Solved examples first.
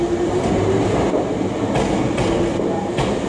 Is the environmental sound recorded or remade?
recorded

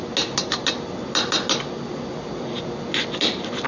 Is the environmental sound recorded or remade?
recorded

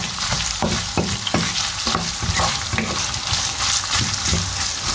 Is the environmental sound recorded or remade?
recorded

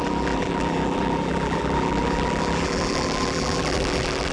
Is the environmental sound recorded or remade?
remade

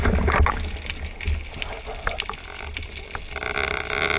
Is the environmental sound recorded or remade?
recorded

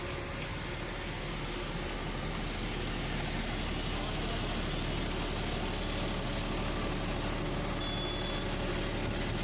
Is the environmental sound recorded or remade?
recorded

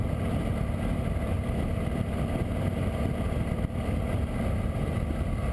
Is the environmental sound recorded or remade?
recorded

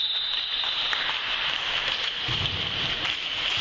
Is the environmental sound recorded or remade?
remade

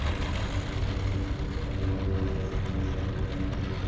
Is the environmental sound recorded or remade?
recorded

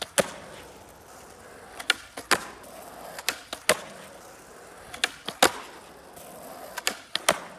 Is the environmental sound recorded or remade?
recorded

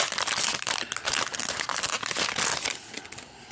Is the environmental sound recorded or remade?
recorded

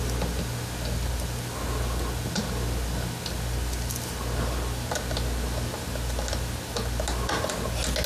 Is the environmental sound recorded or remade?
recorded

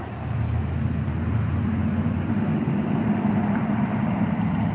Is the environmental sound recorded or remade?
recorded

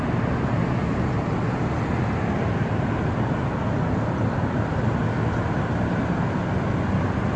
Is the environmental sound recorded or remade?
recorded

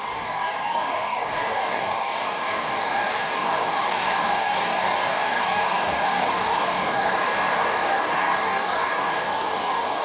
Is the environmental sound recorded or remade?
remade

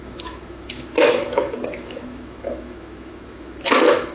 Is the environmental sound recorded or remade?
remade